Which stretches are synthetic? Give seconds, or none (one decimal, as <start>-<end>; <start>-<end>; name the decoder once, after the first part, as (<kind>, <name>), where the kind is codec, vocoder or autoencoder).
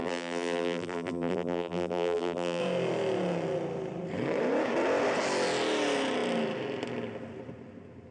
0.0-2.6 (vocoder, BigVGAN v2)